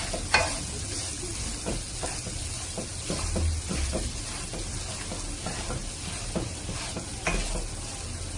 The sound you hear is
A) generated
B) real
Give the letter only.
B